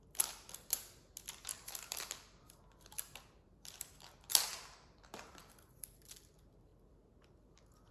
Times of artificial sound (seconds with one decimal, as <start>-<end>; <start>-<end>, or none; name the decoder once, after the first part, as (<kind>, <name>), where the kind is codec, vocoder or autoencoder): 1.5-4.3 (vocoder, BigVGAN v2); 5.4-6.0